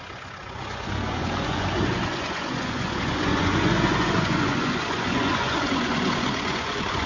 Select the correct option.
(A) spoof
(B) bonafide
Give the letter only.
A